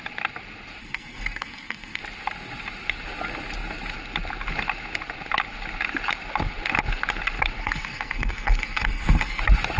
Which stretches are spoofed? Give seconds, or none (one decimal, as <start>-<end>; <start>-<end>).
0.8-2.0; 7.6-9.4